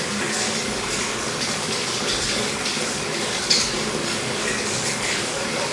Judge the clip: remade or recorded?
remade